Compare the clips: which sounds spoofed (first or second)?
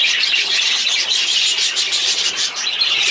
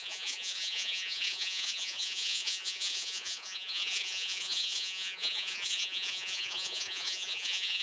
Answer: second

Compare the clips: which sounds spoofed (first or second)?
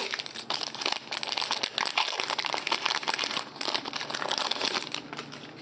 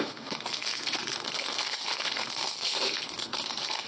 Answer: second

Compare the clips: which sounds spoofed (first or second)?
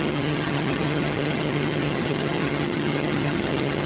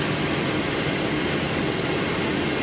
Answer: first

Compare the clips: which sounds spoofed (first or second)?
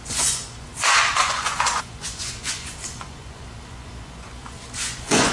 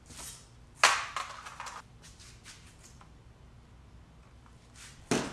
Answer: first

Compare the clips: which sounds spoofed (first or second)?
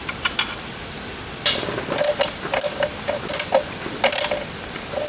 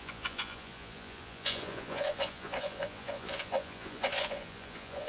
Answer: second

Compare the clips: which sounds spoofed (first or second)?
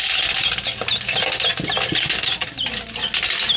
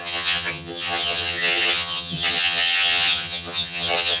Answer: second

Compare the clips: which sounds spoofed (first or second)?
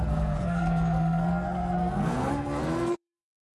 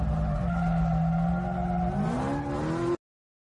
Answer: first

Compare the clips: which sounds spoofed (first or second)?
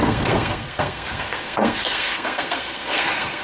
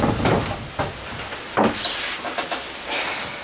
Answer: first